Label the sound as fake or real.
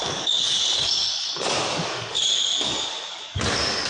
fake